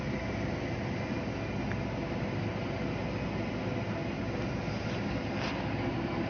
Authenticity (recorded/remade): recorded